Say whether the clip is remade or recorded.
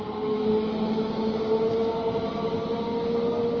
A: recorded